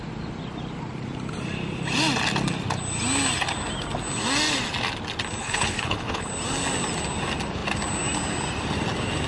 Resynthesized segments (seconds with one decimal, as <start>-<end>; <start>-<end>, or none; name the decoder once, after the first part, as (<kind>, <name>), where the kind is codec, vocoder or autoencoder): 5.4-6.3 (codec, HILCodec)